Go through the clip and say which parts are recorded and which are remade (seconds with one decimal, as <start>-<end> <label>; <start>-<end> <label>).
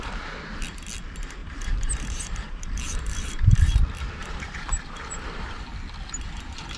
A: 0.0-1.4 recorded; 1.4-3.8 remade; 3.8-4.2 recorded; 4.2-5.6 remade; 5.6-6.8 recorded